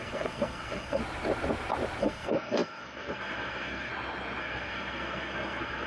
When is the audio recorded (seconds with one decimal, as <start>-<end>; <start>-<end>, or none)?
1.0-2.0; 3.9-4.4